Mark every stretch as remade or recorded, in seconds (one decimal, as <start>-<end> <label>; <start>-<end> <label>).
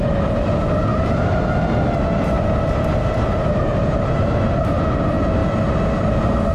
0.0-0.9 recorded; 0.9-1.5 remade; 1.5-3.3 recorded; 3.3-4.8 remade; 4.8-6.5 recorded